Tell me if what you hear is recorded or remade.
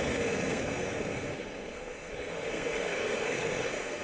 remade